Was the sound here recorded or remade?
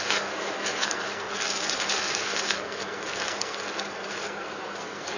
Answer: remade